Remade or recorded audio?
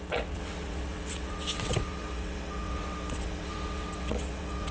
remade